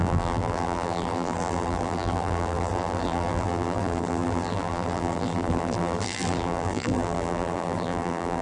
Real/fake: fake